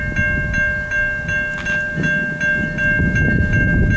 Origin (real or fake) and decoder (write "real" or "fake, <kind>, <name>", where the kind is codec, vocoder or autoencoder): real